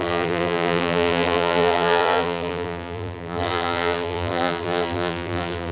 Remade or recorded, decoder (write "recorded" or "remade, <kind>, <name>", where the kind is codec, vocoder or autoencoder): remade, vocoder, BigVGAN v2